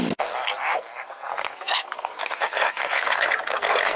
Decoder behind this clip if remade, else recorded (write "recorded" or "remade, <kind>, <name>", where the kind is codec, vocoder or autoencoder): remade, codec, SNAC